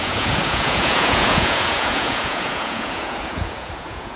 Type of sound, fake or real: fake